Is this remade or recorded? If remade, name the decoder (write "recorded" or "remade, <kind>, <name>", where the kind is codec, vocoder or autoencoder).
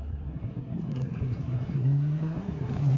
remade, codec, SNAC